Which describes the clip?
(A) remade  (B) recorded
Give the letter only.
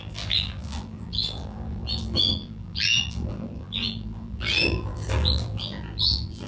A